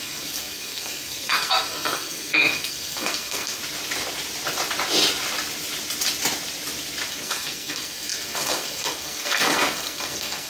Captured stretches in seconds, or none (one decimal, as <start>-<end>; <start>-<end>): 3.6-7.1

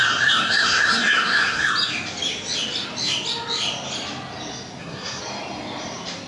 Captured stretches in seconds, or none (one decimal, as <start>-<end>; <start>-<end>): 1.7-4.8; 5.2-6.3

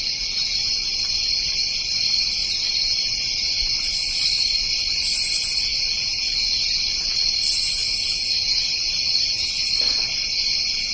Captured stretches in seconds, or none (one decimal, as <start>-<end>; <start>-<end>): 0.0-7.8; 9.5-10.9

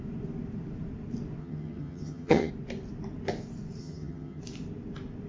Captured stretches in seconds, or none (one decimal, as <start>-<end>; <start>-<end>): 0.0-1.4; 2.5-3.8; 4.4-5.3

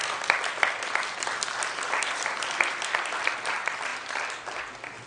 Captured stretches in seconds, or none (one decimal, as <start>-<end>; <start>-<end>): none

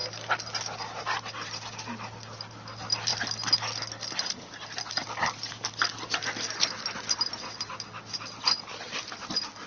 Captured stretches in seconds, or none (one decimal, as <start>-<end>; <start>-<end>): 0.0-9.7

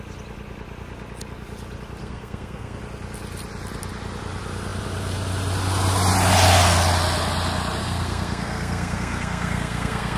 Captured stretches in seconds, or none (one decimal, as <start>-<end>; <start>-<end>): 0.0-2.0; 2.8-7.8

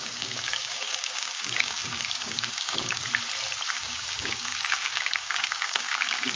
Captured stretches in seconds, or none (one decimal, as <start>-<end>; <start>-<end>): 3.0-3.7